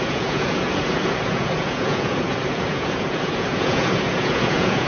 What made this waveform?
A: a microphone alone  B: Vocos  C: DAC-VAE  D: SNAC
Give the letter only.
B